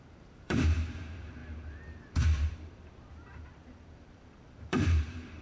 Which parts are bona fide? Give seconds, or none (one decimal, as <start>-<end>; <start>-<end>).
1.4-4.5